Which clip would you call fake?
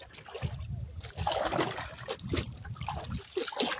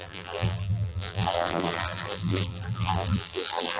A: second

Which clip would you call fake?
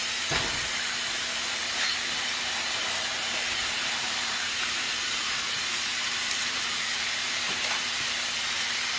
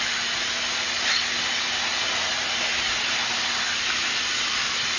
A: first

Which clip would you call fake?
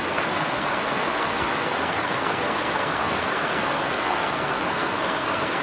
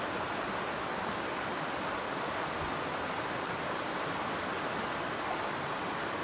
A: first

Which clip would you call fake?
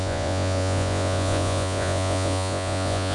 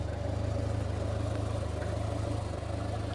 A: first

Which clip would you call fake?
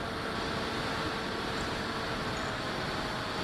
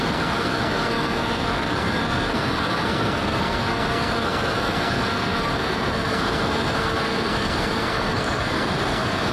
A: second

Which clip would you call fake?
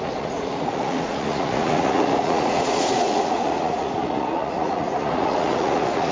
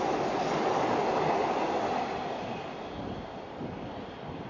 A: first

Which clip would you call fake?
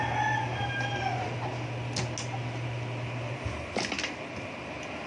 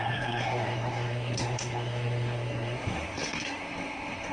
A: second